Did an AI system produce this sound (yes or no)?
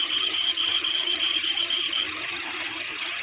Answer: yes